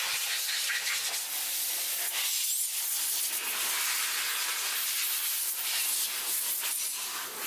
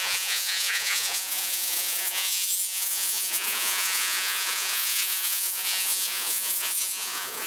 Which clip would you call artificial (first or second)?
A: second